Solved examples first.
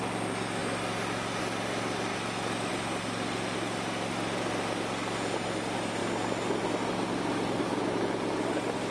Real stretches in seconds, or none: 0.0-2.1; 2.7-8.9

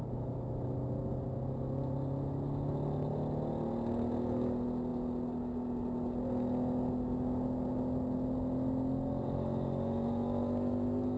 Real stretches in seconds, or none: 0.0-11.2